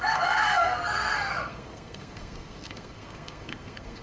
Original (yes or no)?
no